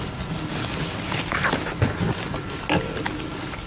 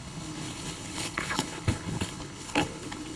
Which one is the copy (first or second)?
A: second